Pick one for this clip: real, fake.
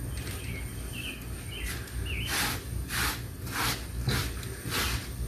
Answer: real